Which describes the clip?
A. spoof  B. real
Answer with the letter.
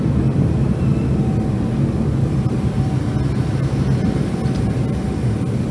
B